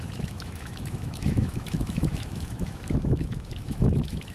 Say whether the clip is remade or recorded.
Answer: remade